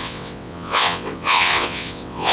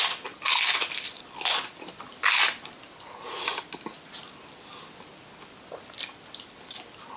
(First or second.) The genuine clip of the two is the second